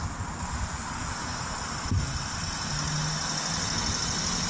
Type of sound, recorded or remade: recorded